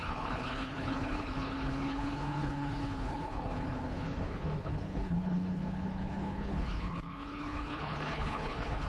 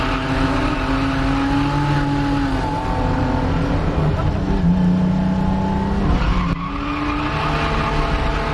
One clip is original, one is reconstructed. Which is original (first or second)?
second